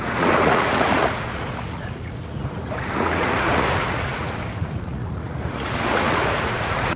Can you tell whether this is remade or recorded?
remade